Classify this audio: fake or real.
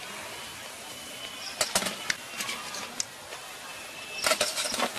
real